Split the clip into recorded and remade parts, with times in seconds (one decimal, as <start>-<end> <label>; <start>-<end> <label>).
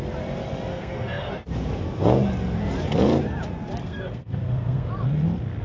0.0-0.7 recorded; 0.7-1.3 remade; 1.3-3.8 recorded; 3.8-4.9 remade; 4.9-5.6 recorded